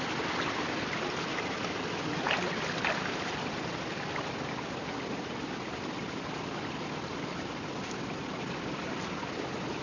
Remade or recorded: recorded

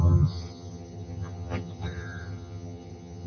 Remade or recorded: remade